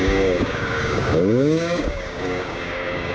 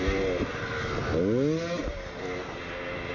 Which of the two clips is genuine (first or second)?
second